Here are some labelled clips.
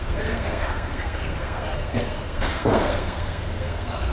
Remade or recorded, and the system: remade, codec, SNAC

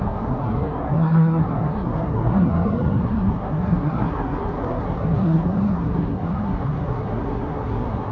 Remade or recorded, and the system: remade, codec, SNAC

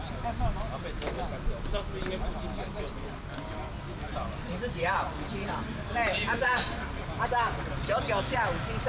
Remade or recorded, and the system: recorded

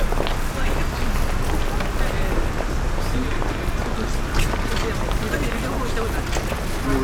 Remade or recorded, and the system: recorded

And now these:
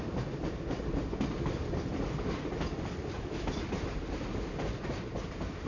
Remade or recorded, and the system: recorded